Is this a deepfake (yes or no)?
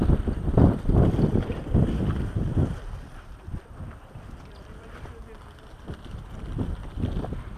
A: yes